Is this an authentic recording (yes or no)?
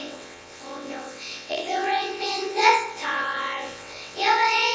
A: no